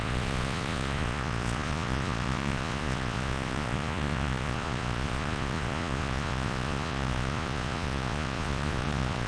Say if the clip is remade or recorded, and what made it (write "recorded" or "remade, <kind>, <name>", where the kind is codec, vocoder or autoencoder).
remade, vocoder, Vocos